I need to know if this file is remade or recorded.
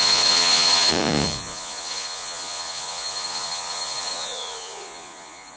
remade